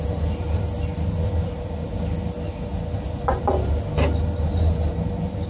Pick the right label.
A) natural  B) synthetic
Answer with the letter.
A